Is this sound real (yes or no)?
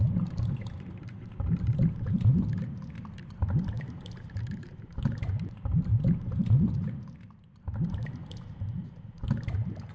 no